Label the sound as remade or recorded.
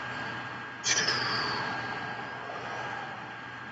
recorded